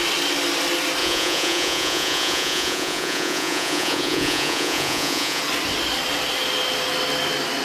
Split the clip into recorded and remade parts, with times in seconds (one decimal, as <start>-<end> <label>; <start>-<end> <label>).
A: 0.0-1.0 recorded; 1.0-5.4 remade; 5.4-7.6 recorded